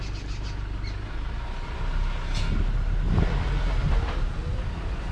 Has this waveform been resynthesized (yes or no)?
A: no